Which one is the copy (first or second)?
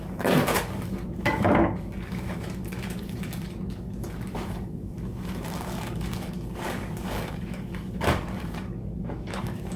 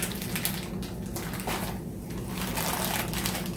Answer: first